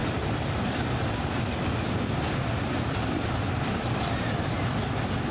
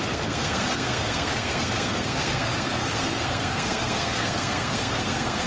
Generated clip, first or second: second